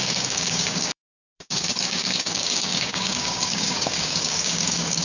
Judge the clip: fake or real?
fake